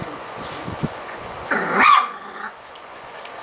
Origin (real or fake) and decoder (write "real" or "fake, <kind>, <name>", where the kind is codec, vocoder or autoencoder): fake, vocoder, Vocos